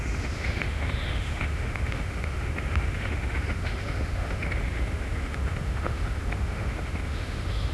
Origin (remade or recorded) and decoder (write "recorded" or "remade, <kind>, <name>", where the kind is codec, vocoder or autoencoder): remade, autoencoder, DAC-VAE